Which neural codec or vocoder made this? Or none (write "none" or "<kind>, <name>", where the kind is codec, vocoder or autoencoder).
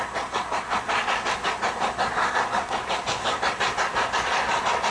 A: none